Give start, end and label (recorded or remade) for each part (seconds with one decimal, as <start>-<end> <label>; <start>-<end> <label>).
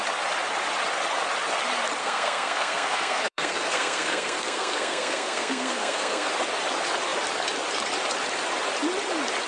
0.0-2.0 recorded; 2.0-6.3 remade; 6.3-9.5 recorded